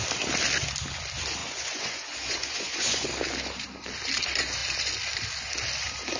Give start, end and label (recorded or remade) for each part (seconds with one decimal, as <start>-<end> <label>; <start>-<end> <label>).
0.0-1.4 recorded; 1.4-3.1 remade; 3.1-6.2 recorded